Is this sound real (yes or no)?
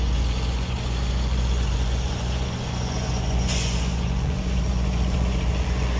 no